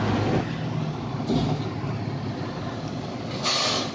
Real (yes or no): yes